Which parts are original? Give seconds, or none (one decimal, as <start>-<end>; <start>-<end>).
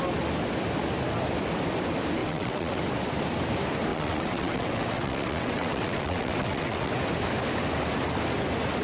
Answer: 0.0-2.2; 2.8-3.9; 6.9-8.8